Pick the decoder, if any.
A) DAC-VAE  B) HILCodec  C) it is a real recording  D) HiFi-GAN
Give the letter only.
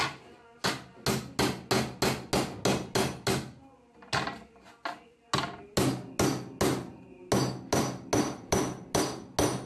C